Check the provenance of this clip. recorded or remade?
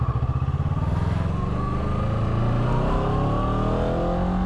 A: recorded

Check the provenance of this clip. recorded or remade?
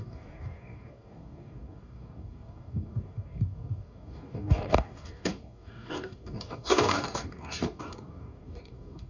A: remade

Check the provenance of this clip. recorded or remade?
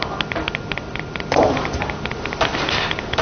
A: recorded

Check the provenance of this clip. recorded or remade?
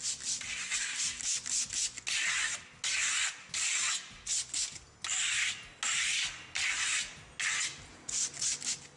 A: recorded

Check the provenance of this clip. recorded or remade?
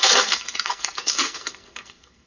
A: remade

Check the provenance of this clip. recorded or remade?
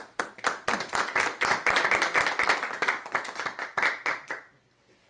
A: recorded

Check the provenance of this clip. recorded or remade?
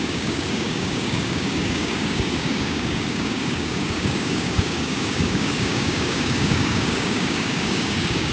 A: remade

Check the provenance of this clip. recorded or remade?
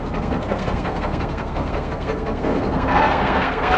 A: remade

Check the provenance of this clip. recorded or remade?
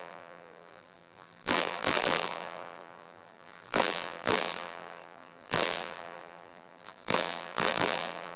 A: remade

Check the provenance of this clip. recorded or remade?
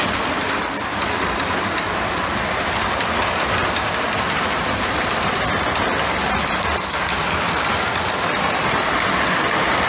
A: remade